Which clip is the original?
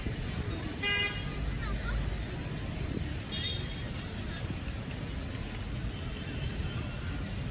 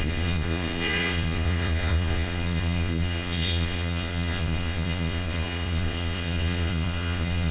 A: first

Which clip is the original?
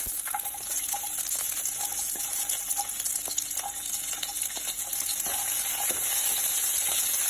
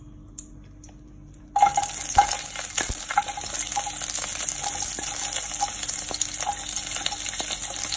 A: second